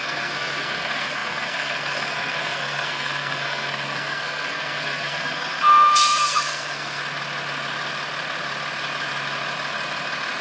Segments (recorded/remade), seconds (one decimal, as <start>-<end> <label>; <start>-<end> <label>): 0.0-7.0 remade; 7.0-10.4 recorded